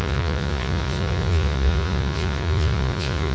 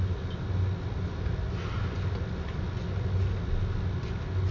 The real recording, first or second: second